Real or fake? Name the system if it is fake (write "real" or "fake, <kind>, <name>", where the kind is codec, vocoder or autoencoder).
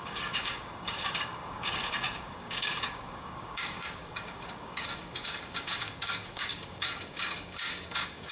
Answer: fake, codec, DAC